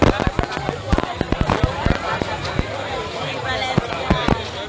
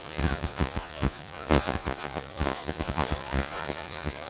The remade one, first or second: second